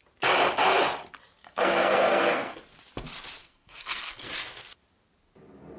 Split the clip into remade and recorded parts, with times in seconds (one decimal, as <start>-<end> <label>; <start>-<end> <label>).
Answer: 0.0-1.4 recorded; 1.4-2.6 remade; 2.6-3.4 recorded; 3.4-4.3 remade; 4.3-5.8 recorded